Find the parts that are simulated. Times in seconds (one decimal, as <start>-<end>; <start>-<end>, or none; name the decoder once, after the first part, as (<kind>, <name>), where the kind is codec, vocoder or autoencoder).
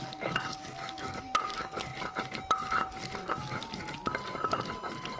0.0-1.9 (codec, DAC)